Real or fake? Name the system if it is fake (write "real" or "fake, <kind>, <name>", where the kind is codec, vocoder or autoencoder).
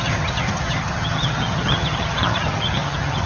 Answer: fake, vocoder, HiFi-GAN